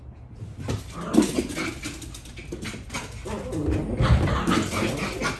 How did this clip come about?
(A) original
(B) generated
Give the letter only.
A